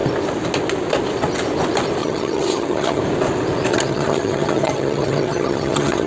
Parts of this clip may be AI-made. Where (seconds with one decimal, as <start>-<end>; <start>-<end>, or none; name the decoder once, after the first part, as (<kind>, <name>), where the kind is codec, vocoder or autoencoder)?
2.0-3.0 (vocoder, HiFi-GAN); 3.7-6.1